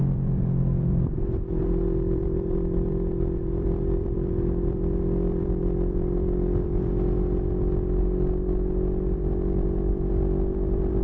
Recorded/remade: remade